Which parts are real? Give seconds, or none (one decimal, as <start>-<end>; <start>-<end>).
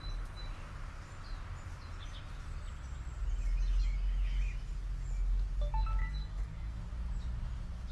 0.0-6.0; 6.8-7.9